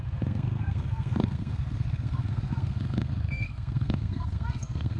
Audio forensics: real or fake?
fake